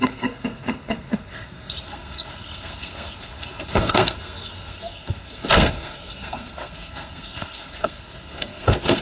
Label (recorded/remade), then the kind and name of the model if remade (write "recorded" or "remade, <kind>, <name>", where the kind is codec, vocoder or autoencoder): remade, codec, SNAC